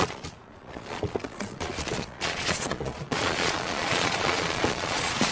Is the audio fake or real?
fake